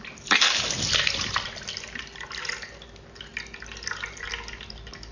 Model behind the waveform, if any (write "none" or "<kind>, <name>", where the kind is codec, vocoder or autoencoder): none